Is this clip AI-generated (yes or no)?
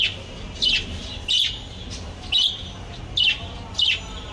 no